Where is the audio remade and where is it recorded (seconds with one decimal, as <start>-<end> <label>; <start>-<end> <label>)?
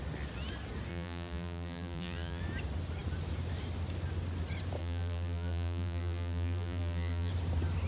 0.0-0.9 recorded; 0.9-2.4 remade; 2.4-4.8 recorded; 4.8-7.3 remade; 7.3-7.9 recorded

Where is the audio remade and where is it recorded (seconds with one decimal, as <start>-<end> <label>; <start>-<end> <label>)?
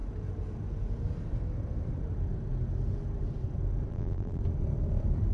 0.0-3.9 recorded; 3.9-4.4 remade; 4.4-5.3 recorded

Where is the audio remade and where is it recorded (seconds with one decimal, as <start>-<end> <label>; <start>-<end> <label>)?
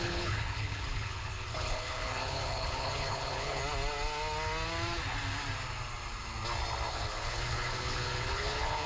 0.0-3.6 remade; 3.6-6.9 recorded; 6.9-8.9 remade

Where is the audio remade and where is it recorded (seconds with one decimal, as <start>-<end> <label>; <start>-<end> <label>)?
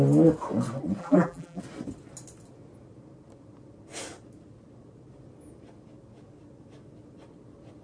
0.0-1.0 recorded; 1.0-1.6 remade; 1.6-7.8 recorded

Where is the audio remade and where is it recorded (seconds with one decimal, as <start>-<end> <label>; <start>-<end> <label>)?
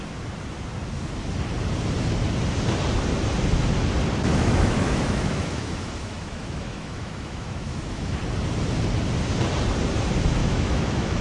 0.0-4.3 recorded; 4.3-8.2 remade; 8.2-10.4 recorded; 10.4-11.2 remade